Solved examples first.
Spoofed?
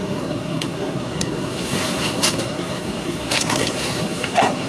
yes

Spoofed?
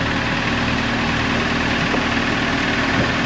no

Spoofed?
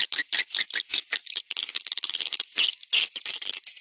no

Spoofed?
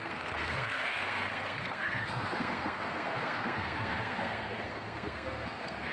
yes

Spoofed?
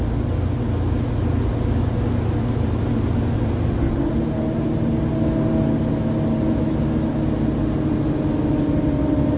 no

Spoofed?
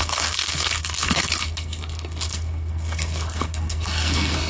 yes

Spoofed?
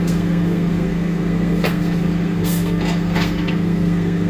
yes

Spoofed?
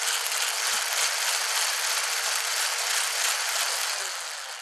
no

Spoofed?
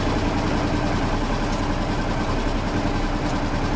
no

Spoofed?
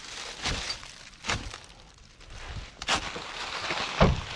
no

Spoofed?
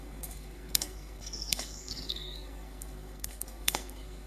yes